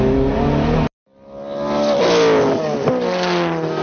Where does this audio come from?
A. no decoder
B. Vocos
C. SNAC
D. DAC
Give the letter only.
A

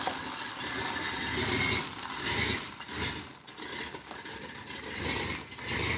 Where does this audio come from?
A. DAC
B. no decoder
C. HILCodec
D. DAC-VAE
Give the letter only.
B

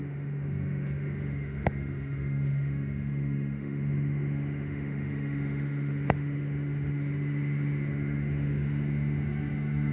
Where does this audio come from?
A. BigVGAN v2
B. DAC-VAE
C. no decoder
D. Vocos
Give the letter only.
B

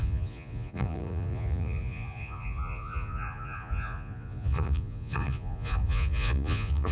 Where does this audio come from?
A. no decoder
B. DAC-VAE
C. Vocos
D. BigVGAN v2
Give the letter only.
C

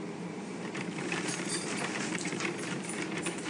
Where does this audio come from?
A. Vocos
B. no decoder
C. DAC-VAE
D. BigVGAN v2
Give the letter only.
D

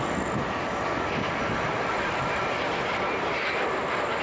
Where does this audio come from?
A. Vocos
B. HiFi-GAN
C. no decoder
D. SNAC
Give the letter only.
C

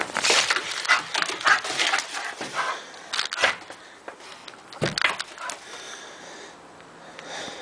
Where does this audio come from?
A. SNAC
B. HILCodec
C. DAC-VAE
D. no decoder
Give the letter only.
D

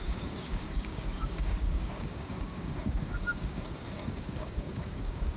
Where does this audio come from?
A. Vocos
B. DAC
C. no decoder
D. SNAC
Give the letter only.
B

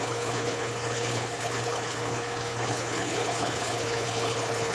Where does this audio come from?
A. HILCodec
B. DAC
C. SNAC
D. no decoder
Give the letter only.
A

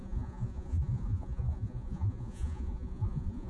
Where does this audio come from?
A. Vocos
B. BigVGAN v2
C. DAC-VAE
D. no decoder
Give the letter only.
A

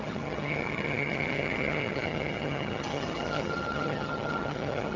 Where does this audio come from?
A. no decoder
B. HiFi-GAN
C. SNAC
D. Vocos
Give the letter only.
B